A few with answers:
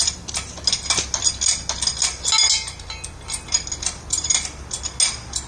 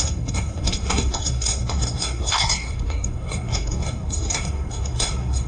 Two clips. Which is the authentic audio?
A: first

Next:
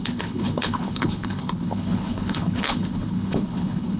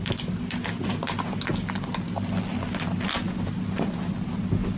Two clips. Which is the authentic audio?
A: second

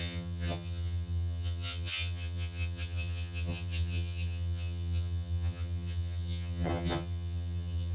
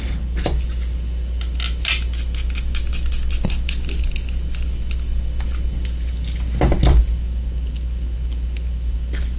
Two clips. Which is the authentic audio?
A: second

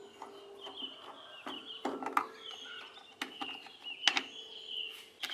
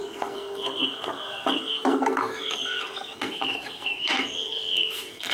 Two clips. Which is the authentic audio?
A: first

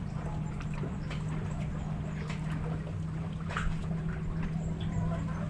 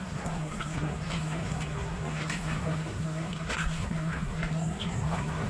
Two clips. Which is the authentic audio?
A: first